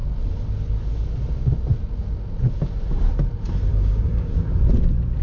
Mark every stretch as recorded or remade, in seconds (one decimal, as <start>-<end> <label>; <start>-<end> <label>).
0.0-3.7 recorded; 3.7-4.3 remade; 4.3-5.2 recorded

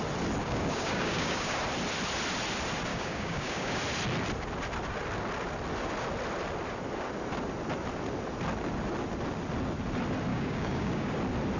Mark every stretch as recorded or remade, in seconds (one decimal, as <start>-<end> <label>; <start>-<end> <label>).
0.0-0.4 recorded; 0.4-1.6 remade; 1.6-2.9 recorded; 2.9-3.8 remade; 3.8-10.3 recorded; 10.3-11.1 remade; 11.1-11.6 recorded

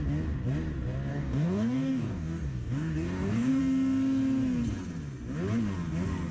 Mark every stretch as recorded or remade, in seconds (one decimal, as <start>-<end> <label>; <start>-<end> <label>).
0.0-1.1 recorded; 1.1-3.6 remade; 3.6-6.3 recorded

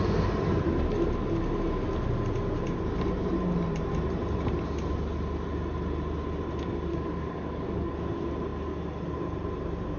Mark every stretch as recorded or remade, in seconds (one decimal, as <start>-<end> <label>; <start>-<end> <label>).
0.0-6.9 recorded; 6.9-7.9 remade; 7.9-10.0 recorded

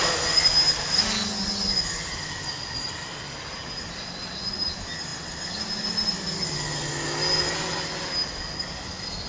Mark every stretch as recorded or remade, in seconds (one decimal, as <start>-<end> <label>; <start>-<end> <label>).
0.0-9.3 recorded